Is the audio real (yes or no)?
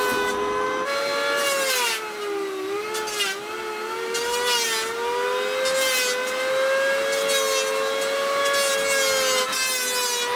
yes